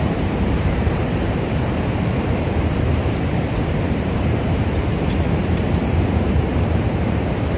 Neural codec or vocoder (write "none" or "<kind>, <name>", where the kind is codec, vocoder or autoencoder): vocoder, BigVGAN v2